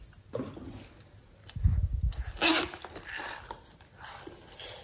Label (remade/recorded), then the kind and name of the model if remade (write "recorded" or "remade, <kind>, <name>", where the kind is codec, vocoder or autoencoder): recorded